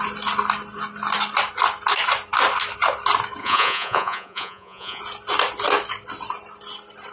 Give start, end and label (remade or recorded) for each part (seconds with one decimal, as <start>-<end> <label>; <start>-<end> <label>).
0.0-3.4 recorded; 3.4-5.0 remade; 5.0-7.1 recorded